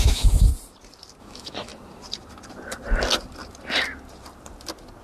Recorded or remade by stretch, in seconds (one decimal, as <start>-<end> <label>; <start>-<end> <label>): 0.0-0.5 remade; 0.5-1.2 recorded; 1.2-1.7 remade; 1.7-5.0 recorded